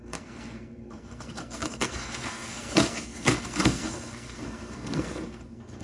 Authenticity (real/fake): fake